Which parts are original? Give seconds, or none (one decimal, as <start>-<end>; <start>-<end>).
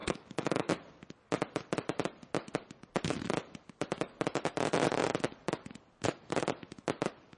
0.7-7.4